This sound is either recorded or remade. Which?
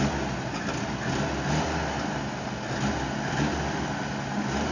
recorded